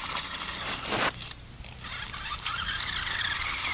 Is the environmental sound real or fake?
real